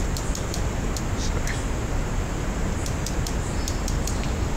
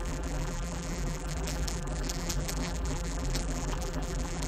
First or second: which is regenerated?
second